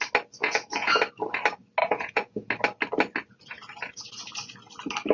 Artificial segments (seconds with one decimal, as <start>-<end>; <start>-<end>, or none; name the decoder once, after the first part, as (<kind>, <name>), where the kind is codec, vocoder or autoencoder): 0.4-1.0 (vocoder, Vocos); 1.8-2.5